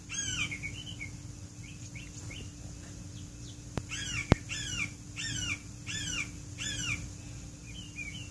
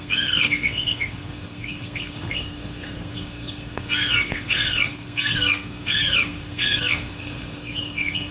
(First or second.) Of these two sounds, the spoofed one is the second